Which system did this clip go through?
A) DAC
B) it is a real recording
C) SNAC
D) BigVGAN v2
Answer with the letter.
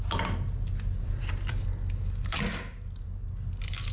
B